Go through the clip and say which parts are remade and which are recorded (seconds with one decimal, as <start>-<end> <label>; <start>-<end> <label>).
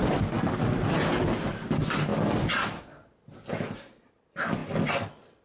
0.0-5.4 recorded